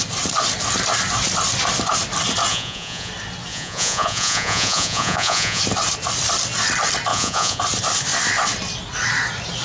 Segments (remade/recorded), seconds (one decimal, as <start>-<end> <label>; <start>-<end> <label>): 0.0-2.5 recorded; 2.5-3.1 remade; 3.1-3.5 recorded; 3.5-5.6 remade; 5.6-7.1 recorded; 7.1-7.6 remade; 7.6-9.6 recorded